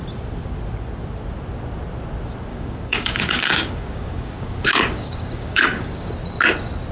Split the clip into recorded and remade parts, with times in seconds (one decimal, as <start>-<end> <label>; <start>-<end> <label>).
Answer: 0.0-2.5 recorded; 2.5-6.1 remade; 6.1-6.9 recorded